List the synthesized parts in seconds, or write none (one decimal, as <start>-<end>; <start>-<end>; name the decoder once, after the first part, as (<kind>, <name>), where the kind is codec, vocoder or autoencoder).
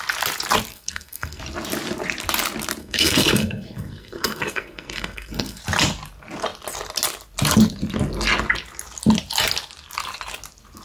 0.7-1.4 (codec, SNAC); 2.8-5.6